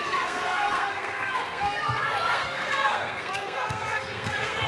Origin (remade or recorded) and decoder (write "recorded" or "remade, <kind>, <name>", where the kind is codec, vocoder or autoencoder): remade, codec, SNAC